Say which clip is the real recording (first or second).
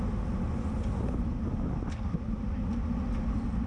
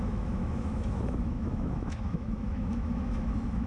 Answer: first